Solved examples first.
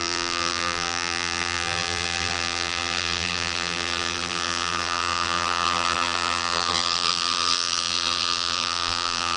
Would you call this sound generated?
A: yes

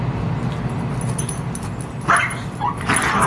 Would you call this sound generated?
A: no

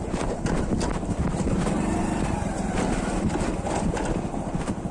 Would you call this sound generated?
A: no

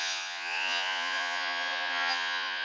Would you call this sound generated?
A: yes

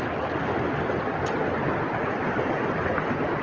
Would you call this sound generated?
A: no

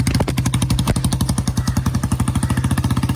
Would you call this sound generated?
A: no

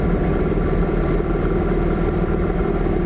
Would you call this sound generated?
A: yes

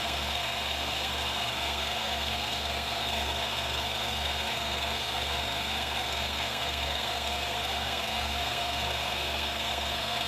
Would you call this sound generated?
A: yes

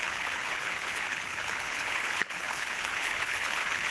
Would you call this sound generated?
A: yes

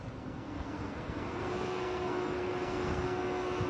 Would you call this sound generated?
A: yes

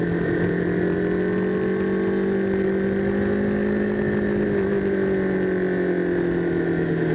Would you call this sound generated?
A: no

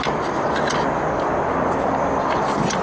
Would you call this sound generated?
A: no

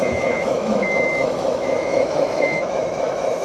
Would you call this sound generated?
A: yes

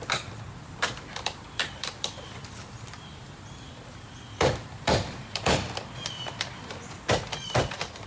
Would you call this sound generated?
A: yes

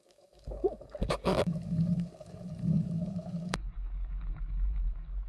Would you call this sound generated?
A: yes